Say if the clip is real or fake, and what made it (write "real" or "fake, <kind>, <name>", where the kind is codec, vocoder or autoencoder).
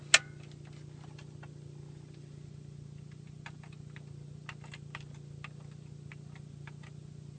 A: real